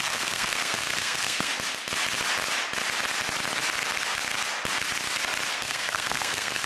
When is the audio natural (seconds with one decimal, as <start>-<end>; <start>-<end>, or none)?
1.5-5.5